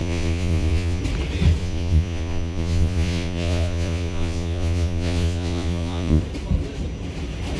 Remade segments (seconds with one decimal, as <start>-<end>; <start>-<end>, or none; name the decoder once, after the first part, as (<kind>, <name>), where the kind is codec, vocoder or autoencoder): 0.0-1.0 (vocoder, Vocos); 1.6-6.2